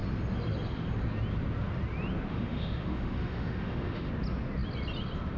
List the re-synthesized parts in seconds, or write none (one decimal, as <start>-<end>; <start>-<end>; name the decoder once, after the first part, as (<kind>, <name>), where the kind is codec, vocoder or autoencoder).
2.3-4.1 (autoencoder, DAC-VAE)